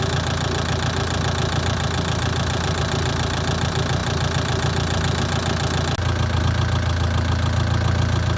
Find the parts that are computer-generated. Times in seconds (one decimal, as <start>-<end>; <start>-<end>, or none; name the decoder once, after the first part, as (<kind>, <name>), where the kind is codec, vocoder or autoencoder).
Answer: none